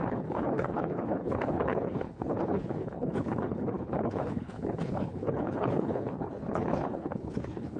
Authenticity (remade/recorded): remade